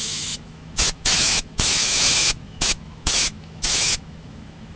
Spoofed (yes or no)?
yes